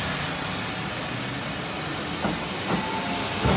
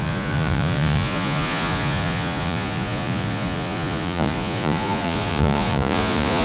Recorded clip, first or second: first